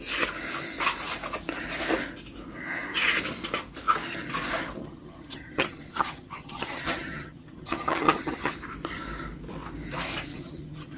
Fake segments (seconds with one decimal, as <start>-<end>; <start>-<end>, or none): 4.8-8.5; 10.3-11.0